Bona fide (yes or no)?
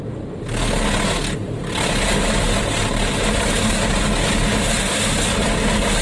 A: yes